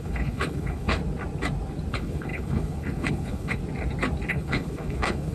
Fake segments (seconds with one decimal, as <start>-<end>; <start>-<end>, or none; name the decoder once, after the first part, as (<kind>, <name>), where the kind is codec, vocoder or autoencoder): 0.0-1.0 (codec, HILCodec); 1.9-3.6; 4.3-5.3